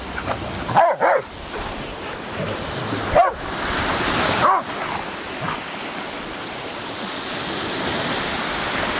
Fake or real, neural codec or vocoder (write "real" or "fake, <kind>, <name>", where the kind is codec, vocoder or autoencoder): real